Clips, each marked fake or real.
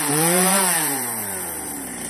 fake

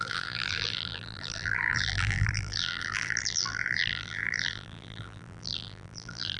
fake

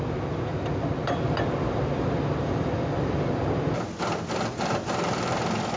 real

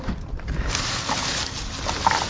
real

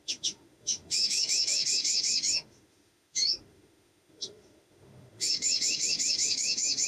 fake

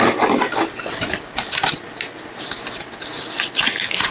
real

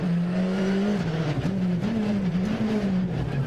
fake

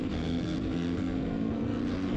fake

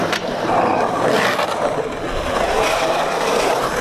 fake